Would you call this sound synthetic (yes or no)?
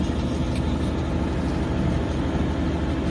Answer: no